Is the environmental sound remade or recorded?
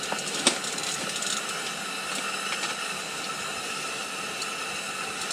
recorded